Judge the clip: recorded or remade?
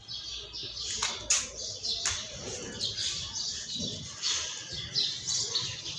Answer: recorded